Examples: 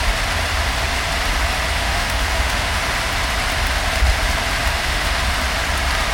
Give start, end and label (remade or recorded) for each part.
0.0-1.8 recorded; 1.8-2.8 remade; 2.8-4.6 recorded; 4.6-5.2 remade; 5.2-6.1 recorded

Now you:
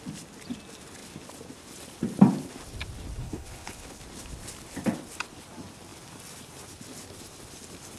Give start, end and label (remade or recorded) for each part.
0.0-3.2 recorded; 3.2-4.0 remade; 4.0-8.0 recorded

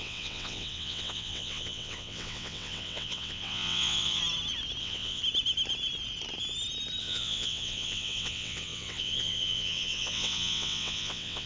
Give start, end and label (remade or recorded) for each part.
0.0-4.2 remade; 4.2-4.8 recorded; 4.8-5.2 remade; 5.2-7.0 recorded; 7.0-11.5 remade

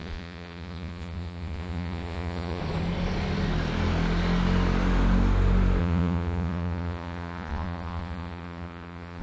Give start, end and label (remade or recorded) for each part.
0.0-2.6 remade; 2.6-5.8 recorded; 5.8-9.2 remade

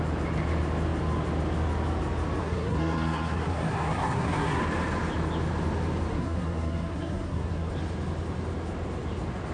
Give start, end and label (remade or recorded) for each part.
0.0-2.4 recorded; 2.4-4.6 remade; 4.6-6.1 recorded; 6.1-7.7 remade; 7.7-9.5 recorded

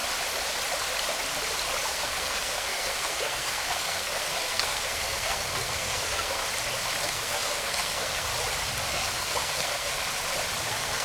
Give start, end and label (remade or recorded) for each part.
0.0-1.9 recorded; 1.9-6.4 remade; 6.4-7.0 recorded; 7.0-8.3 remade; 8.3-8.9 recorded; 8.9-10.0 remade; 10.0-10.6 recorded; 10.6-11.0 remade